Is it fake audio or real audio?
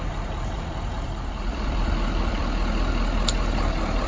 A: fake